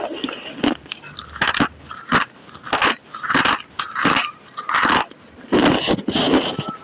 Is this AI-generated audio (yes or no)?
no